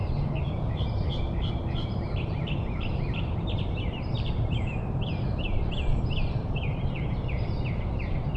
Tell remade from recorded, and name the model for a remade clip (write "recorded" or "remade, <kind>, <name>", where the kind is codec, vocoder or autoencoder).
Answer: remade, vocoder, BigVGAN v2